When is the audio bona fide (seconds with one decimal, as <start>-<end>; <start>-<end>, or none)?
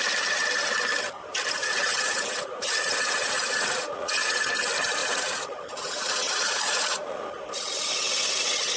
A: 0.0-1.6; 4.5-5.0; 7.4-8.8